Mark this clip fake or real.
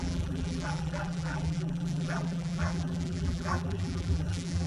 fake